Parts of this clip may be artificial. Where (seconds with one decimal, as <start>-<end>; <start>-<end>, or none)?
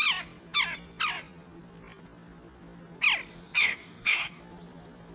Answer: 3.6-4.4